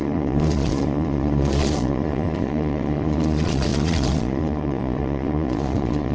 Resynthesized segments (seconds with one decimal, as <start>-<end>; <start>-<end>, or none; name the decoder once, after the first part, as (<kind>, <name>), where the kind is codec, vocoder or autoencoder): 0.0-6.1 (vocoder, Vocos)